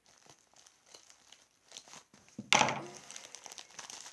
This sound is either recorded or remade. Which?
recorded